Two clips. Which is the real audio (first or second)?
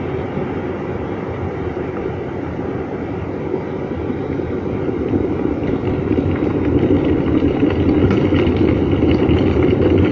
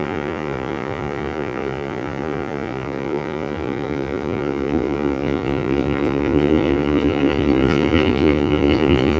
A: first